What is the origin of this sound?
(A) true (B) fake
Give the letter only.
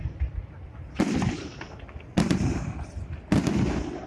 A